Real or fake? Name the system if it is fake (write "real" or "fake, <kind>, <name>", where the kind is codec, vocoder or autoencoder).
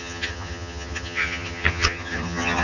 fake, vocoder, HiFi-GAN